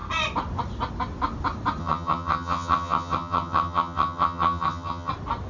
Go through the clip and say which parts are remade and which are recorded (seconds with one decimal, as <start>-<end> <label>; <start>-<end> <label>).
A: 0.0-1.8 recorded; 1.8-5.1 remade; 5.1-5.5 recorded